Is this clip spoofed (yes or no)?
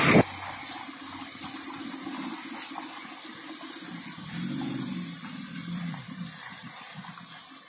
no